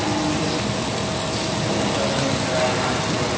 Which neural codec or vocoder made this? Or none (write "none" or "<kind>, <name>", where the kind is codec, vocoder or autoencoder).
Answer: none